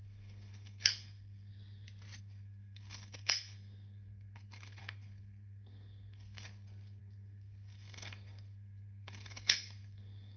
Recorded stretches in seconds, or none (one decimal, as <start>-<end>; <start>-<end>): 1.5-2.2